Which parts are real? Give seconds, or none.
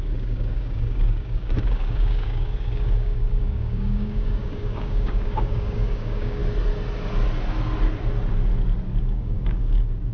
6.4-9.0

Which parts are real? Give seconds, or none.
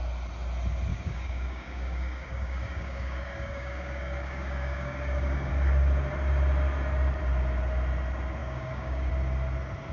0.0-0.9; 5.5-8.4; 9.1-9.9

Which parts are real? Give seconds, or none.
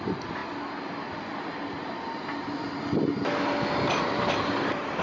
0.0-5.0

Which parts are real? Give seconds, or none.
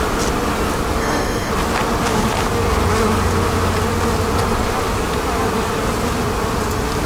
0.0-1.0; 1.5-7.1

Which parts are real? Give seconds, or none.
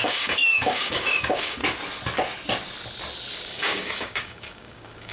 1.6-3.4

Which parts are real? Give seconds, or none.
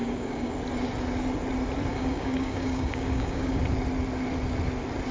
0.5-1.9; 3.6-5.1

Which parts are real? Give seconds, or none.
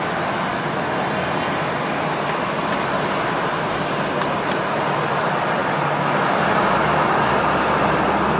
0.0-8.4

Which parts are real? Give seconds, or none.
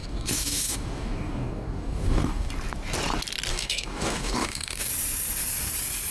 2.5-3.5; 4.9-6.1